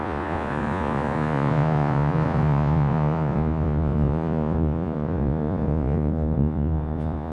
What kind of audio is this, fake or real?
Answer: fake